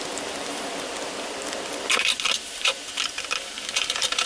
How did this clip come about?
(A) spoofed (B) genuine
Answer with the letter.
A